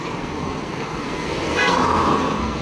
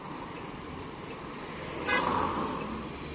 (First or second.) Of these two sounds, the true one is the second